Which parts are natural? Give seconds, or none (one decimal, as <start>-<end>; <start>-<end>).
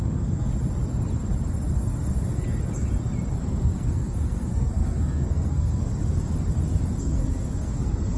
0.5-3.4; 5.9-7.0